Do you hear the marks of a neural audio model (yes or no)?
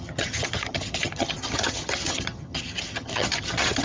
yes